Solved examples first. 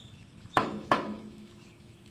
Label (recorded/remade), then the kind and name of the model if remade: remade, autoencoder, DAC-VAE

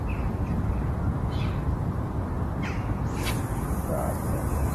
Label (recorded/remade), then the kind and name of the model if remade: recorded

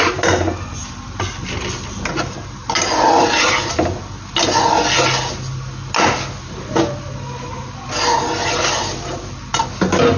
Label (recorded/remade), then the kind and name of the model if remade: recorded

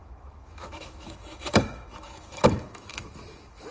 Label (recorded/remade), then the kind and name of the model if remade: remade, autoencoder, DAC-VAE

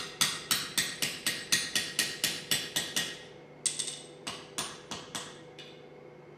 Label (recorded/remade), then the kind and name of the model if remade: recorded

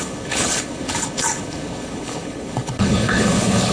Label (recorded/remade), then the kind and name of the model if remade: remade, codec, HILCodec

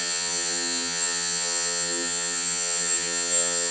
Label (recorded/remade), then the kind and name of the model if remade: remade, vocoder, HiFi-GAN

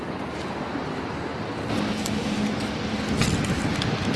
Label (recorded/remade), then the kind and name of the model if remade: recorded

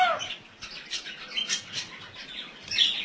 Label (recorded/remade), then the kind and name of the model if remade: recorded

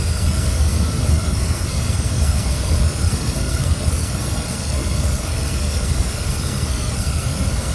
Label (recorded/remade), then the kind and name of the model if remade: remade, codec, SNAC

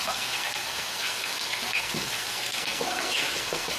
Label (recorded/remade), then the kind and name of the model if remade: remade, codec, SNAC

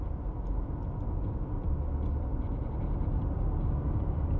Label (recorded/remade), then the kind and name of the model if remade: recorded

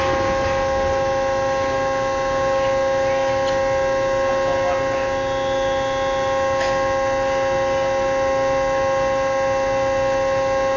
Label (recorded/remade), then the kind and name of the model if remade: recorded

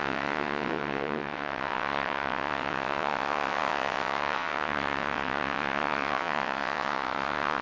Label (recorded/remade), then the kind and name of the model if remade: remade, vocoder, WaveNeXt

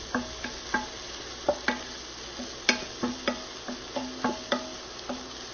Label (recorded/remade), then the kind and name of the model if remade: recorded